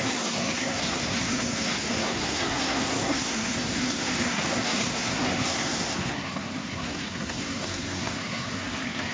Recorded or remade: remade